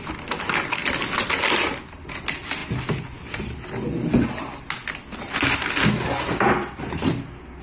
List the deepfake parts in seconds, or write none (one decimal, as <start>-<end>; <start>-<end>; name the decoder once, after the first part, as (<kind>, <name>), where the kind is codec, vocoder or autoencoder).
none